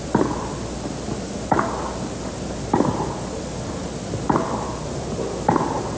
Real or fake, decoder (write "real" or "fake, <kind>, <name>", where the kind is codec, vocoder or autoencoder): real